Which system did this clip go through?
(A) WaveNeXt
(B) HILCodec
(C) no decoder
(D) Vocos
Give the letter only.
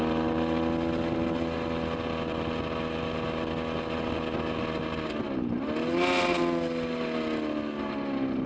C